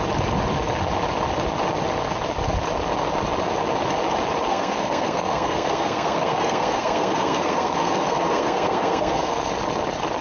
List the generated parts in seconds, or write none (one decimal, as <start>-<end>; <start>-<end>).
4.5-9.5